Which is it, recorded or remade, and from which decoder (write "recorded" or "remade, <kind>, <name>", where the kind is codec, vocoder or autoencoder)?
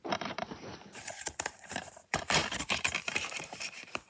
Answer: remade, vocoder, BigVGAN v2